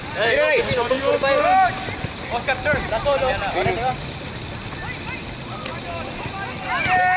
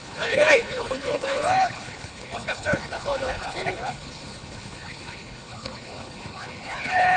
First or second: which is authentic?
first